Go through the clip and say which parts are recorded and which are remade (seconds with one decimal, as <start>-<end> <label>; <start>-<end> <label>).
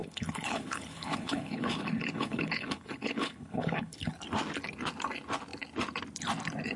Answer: 0.0-4.1 remade; 4.1-6.8 recorded